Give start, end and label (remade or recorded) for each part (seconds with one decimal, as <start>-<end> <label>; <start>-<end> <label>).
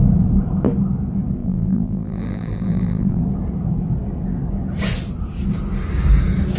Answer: 0.0-1.4 recorded; 1.4-3.2 remade; 3.2-6.6 recorded